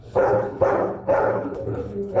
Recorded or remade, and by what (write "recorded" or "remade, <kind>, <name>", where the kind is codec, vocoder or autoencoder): remade, codec, HILCodec